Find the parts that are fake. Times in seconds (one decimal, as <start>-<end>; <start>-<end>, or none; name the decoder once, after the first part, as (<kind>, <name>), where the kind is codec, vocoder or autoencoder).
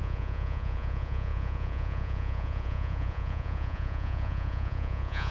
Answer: 0.0-5.3 (vocoder, Vocos)